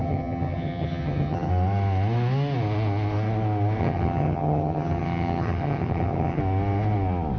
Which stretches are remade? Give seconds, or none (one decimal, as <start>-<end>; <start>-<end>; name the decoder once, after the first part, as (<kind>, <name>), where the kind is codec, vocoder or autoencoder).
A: 0.0-1.5 (vocoder, HiFi-GAN); 3.8-6.4